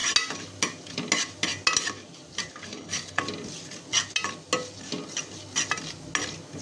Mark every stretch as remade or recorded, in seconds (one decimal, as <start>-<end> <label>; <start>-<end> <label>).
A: 0.0-2.7 recorded; 2.7-3.2 remade; 3.2-6.6 recorded